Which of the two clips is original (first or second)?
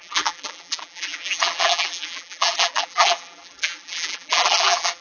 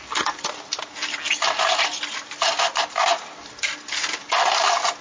second